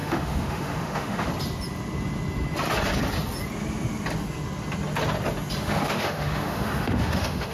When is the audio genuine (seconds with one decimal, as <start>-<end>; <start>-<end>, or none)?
1.3-5.6